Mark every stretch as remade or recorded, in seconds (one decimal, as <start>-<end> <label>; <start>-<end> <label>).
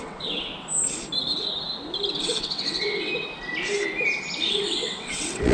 0.0-0.5 remade; 0.5-2.2 recorded; 2.2-3.1 remade; 3.1-4.4 recorded; 4.4-5.5 remade